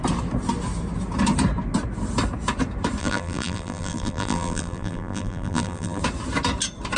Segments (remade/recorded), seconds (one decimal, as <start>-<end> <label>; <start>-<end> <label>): 0.0-3.0 recorded; 3.0-6.0 remade; 6.0-7.0 recorded